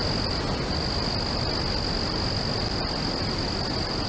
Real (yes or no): yes